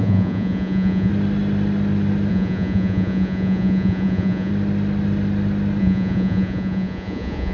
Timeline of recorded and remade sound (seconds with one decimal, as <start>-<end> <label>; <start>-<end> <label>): 0.0-1.1 remade; 1.1-2.3 recorded; 2.3-4.5 remade; 4.5-5.8 recorded; 5.8-7.5 remade